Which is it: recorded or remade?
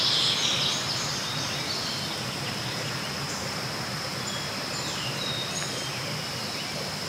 recorded